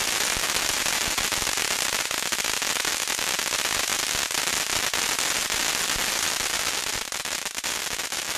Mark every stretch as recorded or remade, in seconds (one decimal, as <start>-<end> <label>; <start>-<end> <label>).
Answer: 0.0-8.4 recorded